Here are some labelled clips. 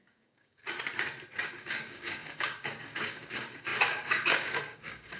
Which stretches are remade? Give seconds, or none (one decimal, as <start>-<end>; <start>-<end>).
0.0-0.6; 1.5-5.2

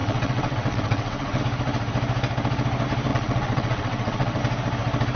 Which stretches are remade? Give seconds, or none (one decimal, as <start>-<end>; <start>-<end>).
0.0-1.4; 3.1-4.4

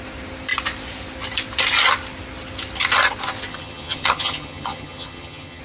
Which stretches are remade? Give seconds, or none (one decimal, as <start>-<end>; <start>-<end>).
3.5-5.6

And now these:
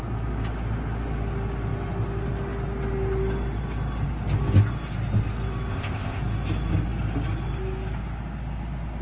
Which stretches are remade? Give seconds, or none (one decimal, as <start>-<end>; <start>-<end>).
5.7-6.2

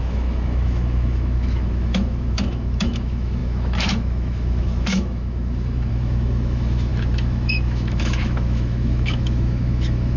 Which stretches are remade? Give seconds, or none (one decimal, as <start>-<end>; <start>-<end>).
0.0-10.2

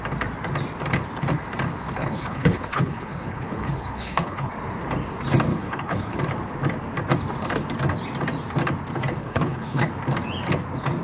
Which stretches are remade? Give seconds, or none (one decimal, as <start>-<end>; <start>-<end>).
2.0-4.5; 5.5-6.2; 9.2-9.9

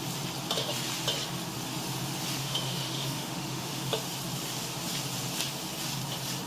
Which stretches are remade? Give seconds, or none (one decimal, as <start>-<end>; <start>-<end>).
2.4-3.9

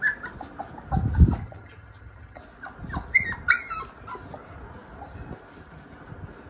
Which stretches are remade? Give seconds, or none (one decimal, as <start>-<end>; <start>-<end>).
1.4-2.4